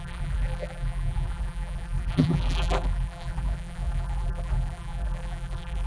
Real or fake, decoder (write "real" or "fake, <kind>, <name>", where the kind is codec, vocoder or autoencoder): fake, vocoder, BigVGAN v2